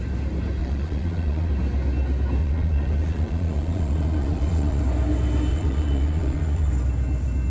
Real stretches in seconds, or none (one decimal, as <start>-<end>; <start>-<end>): 0.0-0.6; 1.5-2.4; 4.8-5.5; 6.7-7.5